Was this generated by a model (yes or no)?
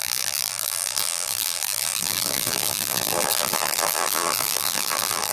yes